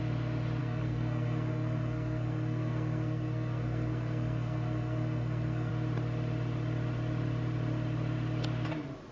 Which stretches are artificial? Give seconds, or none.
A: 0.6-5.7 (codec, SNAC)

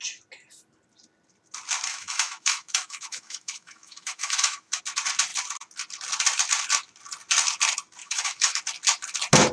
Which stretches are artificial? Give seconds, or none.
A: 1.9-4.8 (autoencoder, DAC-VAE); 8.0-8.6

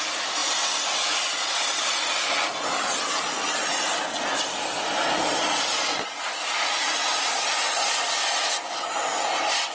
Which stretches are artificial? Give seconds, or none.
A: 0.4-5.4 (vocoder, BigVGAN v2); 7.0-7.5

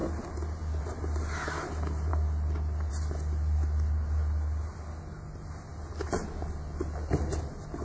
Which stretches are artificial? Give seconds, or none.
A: none